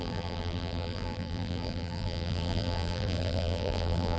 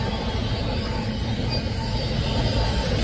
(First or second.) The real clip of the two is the second